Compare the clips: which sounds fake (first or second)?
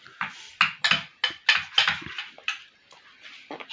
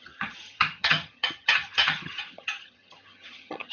second